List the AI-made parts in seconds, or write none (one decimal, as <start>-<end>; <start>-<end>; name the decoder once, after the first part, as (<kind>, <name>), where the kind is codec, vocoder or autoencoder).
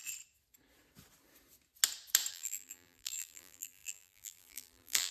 2.3-5.1 (vocoder, BigVGAN v2)